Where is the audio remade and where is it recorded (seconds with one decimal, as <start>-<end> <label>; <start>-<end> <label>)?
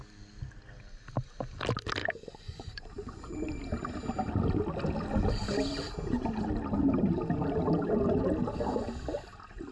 0.0-2.0 recorded; 2.0-3.5 remade; 3.5-9.7 recorded